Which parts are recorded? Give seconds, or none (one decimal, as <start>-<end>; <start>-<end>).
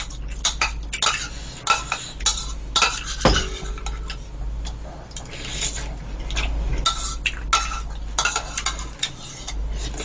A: 0.0-10.0